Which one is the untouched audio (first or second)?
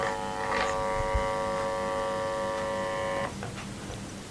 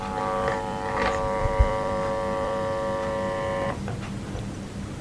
first